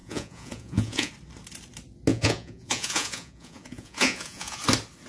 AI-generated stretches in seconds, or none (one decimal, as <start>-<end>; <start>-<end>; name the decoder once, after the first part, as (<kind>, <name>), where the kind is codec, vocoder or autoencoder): 0.0-1.1 (vocoder, Vocos); 2.1-4.6